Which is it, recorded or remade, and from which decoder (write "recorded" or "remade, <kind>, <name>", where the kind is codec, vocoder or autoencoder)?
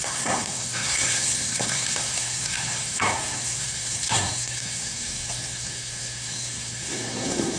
remade, codec, SNAC